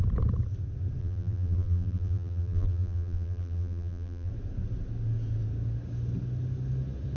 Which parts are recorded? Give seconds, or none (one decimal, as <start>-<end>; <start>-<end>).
0.0-1.0; 4.3-7.2